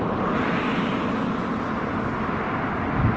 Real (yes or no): yes